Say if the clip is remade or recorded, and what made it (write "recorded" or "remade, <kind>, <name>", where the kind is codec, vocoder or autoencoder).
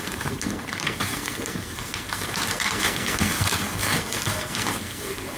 remade, codec, SNAC